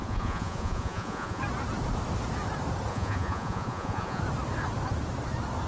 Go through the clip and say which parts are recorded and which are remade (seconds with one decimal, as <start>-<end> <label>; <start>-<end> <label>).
0.0-1.4 remade; 1.4-2.9 recorded; 2.9-4.2 remade; 4.2-5.7 recorded